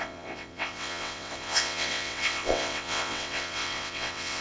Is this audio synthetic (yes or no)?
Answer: yes